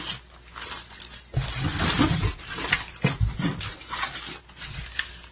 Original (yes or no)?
yes